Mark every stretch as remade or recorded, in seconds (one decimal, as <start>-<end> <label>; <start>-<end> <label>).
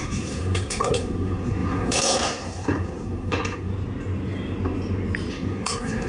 0.0-3.7 remade; 3.7-5.3 recorded; 5.3-6.1 remade